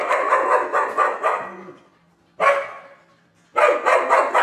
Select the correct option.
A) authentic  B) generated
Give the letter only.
A